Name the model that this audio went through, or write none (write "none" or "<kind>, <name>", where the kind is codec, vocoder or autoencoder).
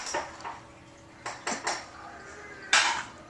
none